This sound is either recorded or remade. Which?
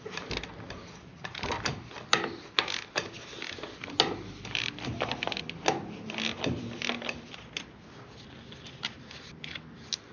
recorded